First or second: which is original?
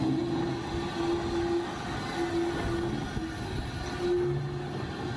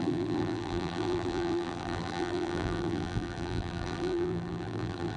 first